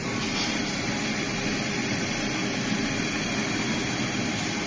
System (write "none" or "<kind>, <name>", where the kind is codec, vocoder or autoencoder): none